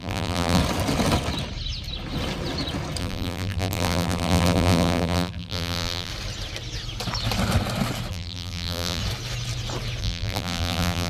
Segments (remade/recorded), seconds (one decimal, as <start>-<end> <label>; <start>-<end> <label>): 0.0-0.6 remade; 0.6-3.0 recorded; 3.0-6.1 remade; 6.1-8.1 recorded; 8.1-9.0 remade; 9.0-10.0 recorded; 10.0-11.1 remade